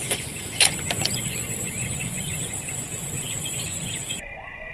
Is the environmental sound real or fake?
fake